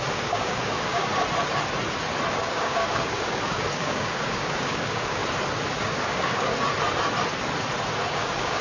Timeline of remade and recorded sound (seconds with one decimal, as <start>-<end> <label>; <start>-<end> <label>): 0.0-1.1 remade; 1.1-2.3 recorded; 2.3-5.2 remade; 5.2-5.8 recorded; 5.8-6.5 remade; 6.5-8.0 recorded; 8.0-8.6 remade